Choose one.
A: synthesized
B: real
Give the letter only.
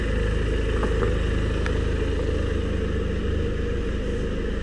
B